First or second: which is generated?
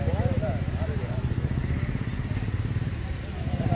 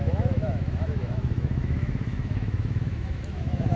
second